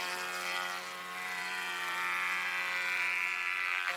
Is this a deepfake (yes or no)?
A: yes